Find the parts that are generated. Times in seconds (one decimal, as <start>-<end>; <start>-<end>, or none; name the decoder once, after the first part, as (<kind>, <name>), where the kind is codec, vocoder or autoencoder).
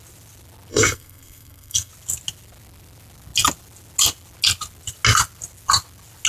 0.7-1.9 (codec, SNAC)